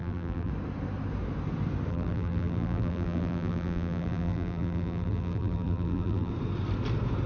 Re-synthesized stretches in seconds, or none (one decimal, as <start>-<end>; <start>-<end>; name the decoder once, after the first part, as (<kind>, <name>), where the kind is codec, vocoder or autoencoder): 0.0-0.5 (vocoder, BigVGAN v2); 1.9-6.3